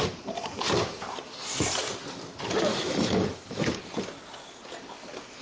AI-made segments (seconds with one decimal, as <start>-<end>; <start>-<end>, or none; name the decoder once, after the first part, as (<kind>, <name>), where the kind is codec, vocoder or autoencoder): 2.7-3.8 (autoencoder, DAC-VAE)